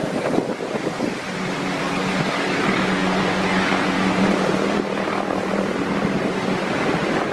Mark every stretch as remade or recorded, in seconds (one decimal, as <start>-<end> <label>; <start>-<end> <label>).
0.0-3.0 recorded; 3.0-4.0 remade; 4.0-7.3 recorded